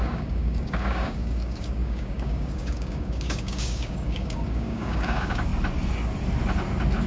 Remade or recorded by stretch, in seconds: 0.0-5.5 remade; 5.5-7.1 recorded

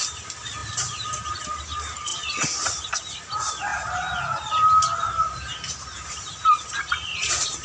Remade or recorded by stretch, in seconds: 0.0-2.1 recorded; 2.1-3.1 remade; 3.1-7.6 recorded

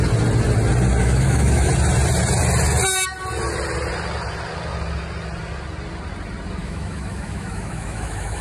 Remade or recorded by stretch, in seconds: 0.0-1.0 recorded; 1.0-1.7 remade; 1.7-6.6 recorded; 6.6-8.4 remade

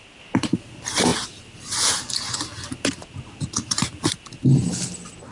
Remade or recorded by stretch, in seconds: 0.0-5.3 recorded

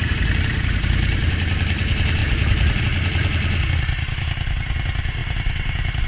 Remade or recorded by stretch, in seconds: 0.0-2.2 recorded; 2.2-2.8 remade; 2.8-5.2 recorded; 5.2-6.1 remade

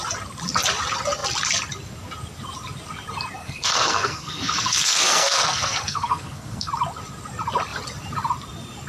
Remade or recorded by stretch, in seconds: 0.0-3.4 recorded; 3.4-6.7 remade; 6.7-8.9 recorded

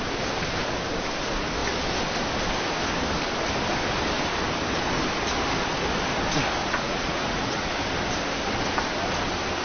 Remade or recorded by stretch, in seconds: 0.0-6.6 recorded; 6.6-7.7 remade; 7.7-9.6 recorded

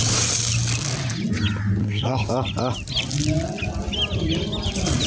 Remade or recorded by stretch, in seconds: 0.0-1.8 recorded; 1.8-2.3 remade; 2.3-5.1 recorded